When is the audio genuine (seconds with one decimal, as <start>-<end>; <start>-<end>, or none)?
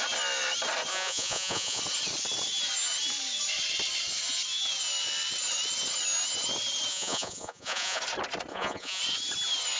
0.0-0.9; 1.8-6.9; 8.0-8.5; 9.0-9.8